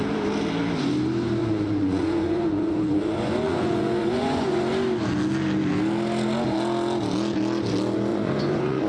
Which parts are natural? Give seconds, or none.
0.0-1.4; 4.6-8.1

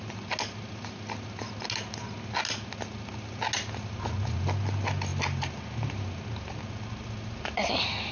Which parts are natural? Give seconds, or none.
0.0-8.1

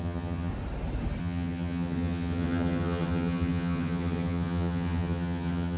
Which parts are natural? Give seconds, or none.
0.5-1.2